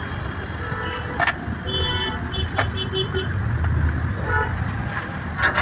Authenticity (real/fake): real